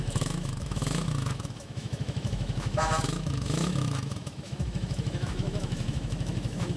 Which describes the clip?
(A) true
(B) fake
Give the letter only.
B